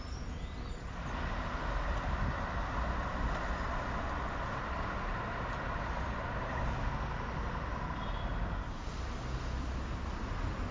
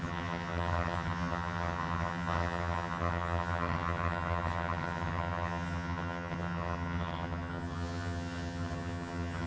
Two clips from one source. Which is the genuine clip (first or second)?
first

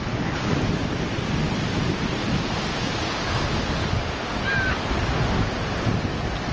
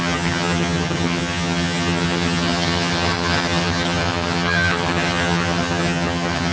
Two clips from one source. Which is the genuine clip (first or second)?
first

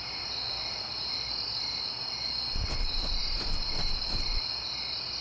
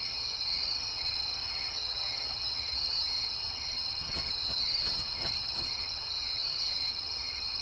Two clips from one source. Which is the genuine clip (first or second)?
first